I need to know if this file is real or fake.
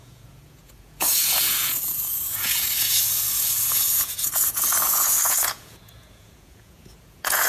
fake